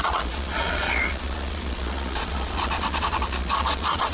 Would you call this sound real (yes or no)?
no